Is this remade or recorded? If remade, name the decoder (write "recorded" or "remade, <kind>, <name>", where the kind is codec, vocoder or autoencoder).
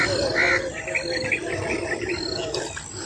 recorded